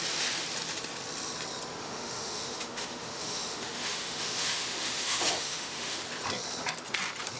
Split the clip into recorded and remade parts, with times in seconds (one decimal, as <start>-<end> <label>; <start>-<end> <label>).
0.0-1.8 recorded; 1.8-6.0 remade; 6.0-7.4 recorded